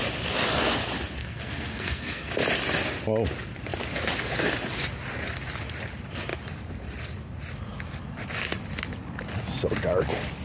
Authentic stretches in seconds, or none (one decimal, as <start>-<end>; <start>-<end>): 0.0-1.2; 2.3-10.4